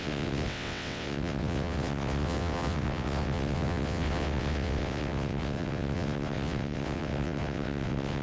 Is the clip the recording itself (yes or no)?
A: no